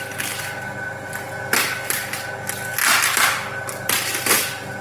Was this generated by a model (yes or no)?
no